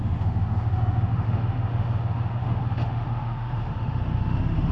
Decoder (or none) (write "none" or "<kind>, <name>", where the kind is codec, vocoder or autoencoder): autoencoder, DAC-VAE